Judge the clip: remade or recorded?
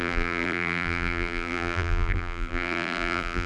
remade